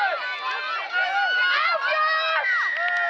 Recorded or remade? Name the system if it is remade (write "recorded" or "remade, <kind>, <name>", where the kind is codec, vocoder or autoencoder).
recorded